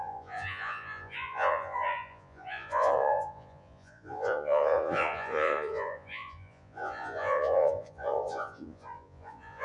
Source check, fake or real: fake